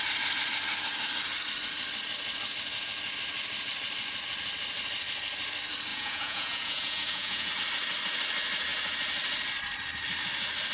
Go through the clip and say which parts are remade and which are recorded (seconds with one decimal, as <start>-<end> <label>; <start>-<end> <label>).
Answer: 0.0-5.9 recorded; 5.9-7.5 remade; 7.5-10.7 recorded